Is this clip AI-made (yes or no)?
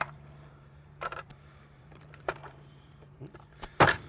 yes